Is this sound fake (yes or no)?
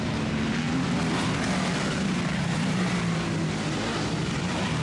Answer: no